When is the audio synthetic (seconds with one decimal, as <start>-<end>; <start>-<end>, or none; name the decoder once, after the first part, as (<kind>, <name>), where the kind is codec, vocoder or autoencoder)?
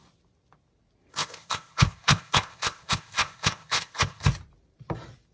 1.1-4.3 (codec, ZipCodec)